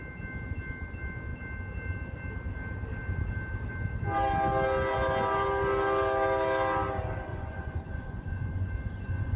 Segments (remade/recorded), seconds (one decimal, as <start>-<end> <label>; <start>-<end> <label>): 0.0-7.3 recorded; 7.3-9.4 remade